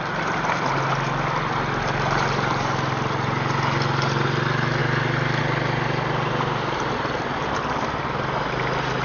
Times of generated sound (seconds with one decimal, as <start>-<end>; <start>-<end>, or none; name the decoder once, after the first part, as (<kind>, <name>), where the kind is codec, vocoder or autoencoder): none